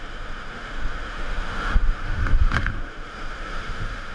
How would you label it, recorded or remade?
remade